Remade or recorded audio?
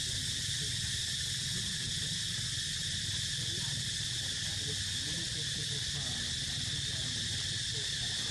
recorded